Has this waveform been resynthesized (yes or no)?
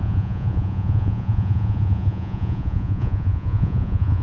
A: yes